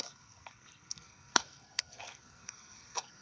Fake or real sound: fake